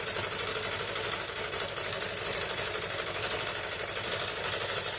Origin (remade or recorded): recorded